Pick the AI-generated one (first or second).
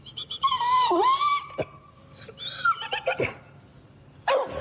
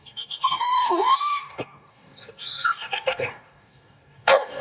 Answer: second